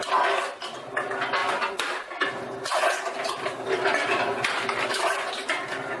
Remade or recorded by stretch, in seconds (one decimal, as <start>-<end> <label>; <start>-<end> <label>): 0.0-6.0 recorded